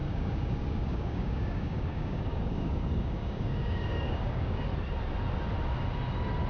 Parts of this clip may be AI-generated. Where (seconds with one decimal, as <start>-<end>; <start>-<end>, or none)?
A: 0.0-4.7

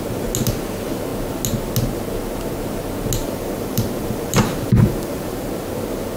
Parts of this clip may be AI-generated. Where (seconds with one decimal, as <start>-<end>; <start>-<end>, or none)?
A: 3.2-5.4

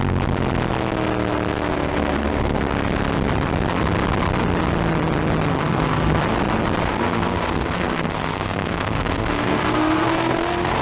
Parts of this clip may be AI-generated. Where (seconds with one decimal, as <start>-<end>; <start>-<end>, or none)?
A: 1.7-2.6; 5.5-6.2; 6.9-10.8

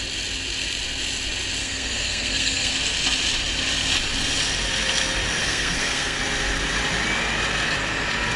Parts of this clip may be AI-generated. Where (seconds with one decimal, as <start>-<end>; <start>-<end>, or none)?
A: 1.6-2.7; 5.4-6.2